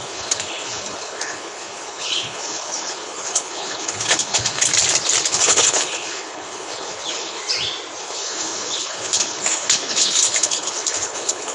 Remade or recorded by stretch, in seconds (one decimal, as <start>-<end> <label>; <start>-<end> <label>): 0.0-4.7 remade; 4.7-5.3 recorded; 5.3-7.4 remade; 7.4-8.0 recorded; 8.0-11.5 remade